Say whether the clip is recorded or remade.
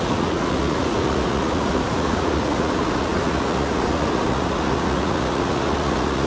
remade